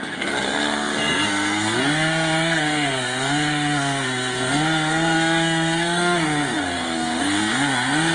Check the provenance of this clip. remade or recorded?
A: remade